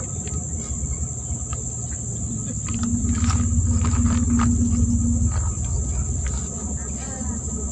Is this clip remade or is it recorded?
recorded